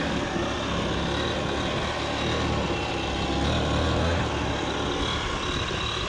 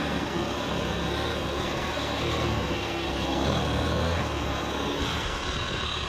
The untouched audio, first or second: first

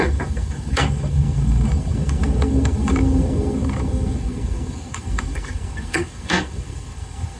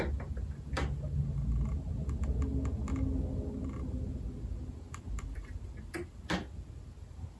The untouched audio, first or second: second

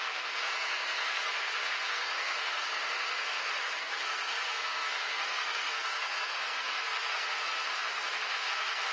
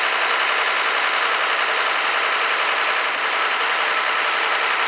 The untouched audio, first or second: second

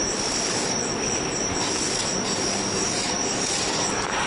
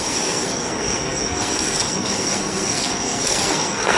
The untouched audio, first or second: first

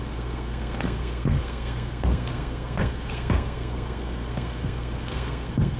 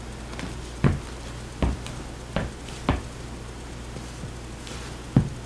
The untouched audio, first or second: second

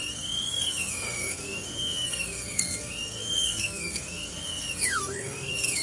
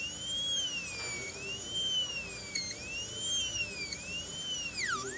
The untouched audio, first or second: second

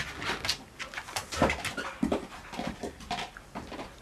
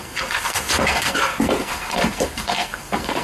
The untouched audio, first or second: first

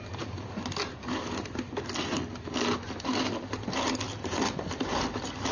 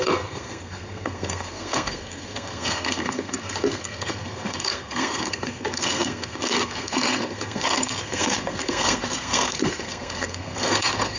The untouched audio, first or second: first